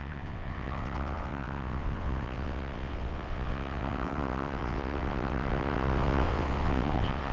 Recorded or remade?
remade